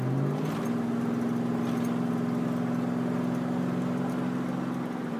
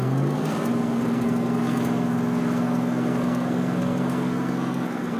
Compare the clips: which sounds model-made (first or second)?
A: second